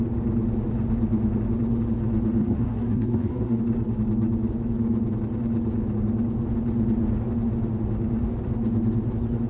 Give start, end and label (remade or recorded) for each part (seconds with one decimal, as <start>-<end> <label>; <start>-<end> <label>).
0.0-2.4 recorded; 2.4-3.6 remade; 3.6-9.5 recorded